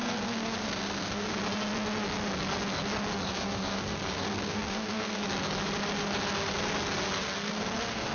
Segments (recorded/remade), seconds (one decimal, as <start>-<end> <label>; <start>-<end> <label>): 0.0-1.4 remade; 1.4-3.3 recorded; 3.3-5.2 remade; 5.2-7.2 recorded; 7.2-8.1 remade